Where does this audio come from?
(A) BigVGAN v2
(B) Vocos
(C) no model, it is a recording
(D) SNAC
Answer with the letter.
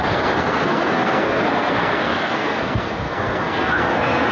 D